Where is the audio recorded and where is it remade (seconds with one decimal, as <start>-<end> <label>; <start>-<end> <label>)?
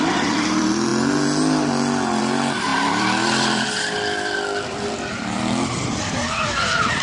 0.0-0.9 remade; 0.9-2.2 recorded; 2.2-7.0 remade